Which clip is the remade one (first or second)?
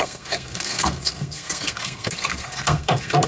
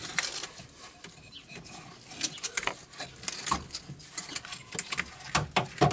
first